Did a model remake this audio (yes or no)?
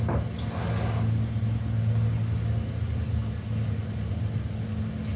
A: no